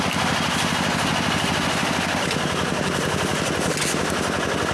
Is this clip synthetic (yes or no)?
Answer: no